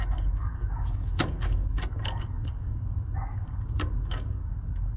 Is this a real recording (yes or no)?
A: no